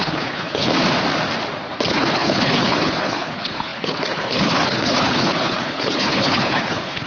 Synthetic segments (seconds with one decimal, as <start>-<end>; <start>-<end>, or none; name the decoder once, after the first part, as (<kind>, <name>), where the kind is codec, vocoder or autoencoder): 0.0-0.7 (codec, HILCodec); 1.9-7.1